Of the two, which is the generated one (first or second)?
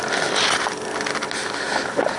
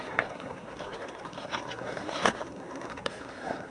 second